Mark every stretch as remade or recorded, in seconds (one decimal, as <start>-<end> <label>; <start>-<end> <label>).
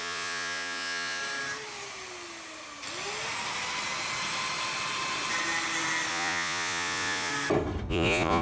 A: 0.0-1.2 remade; 1.2-6.1 recorded; 6.1-7.3 remade; 7.3-7.9 recorded; 7.9-8.4 remade